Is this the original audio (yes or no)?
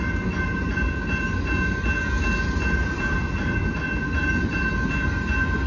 yes